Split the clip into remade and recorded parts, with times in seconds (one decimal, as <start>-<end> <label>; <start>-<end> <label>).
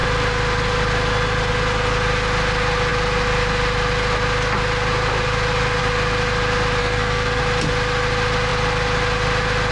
0.0-6.8 recorded; 6.8-7.4 remade; 7.4-9.7 recorded